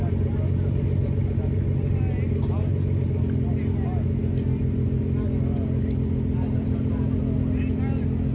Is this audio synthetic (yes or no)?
no